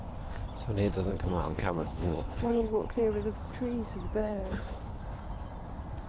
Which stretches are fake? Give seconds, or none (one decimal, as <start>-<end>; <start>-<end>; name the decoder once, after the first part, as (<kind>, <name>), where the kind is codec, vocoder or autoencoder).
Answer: 1.1-3.0 (codec, HILCodec); 4.2-5.0